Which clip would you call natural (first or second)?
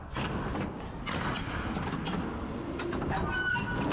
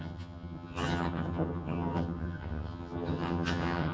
first